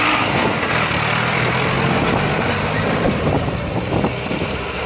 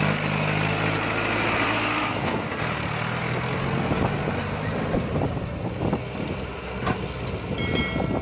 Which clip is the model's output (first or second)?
first